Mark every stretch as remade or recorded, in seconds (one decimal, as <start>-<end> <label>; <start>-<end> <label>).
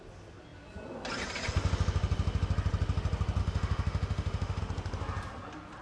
0.0-3.4 recorded; 3.4-4.6 remade; 4.6-5.8 recorded